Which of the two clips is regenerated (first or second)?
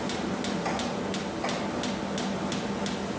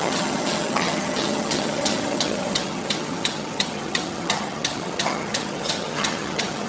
second